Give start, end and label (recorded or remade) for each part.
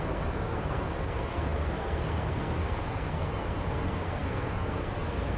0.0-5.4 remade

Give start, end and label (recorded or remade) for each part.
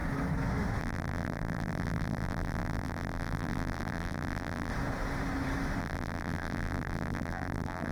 0.0-0.8 recorded; 0.8-4.7 remade; 4.7-5.8 recorded; 5.8-7.9 remade